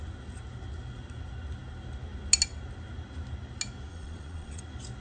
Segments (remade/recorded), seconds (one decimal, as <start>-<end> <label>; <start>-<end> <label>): 0.0-3.9 recorded; 3.9-4.6 remade; 4.6-5.0 recorded